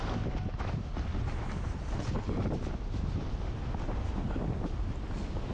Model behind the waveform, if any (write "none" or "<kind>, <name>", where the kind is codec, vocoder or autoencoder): none